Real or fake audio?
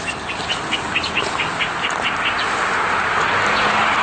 real